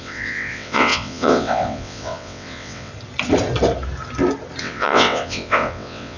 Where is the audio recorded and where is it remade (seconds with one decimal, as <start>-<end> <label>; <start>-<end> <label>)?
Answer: 0.0-2.9 remade; 2.9-4.6 recorded; 4.6-6.2 remade